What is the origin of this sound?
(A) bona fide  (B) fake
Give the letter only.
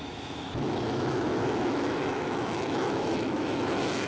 B